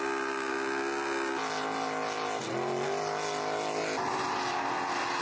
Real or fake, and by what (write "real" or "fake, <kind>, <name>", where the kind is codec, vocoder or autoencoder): real